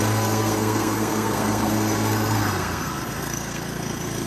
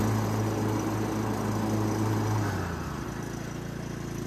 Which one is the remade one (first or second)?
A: first